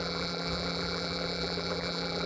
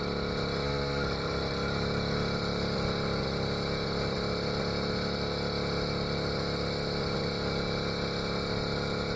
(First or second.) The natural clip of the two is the second